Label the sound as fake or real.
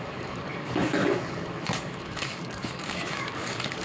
fake